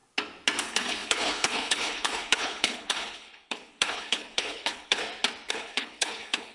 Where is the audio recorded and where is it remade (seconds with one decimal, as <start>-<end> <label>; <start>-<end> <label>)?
0.0-0.6 recorded; 0.6-5.0 remade; 5.0-5.5 recorded; 5.5-6.5 remade